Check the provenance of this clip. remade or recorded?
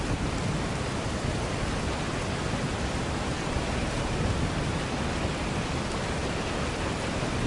recorded